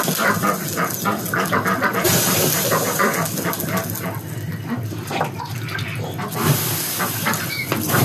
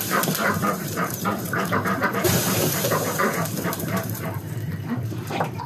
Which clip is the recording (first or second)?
first